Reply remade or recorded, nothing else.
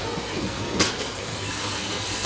remade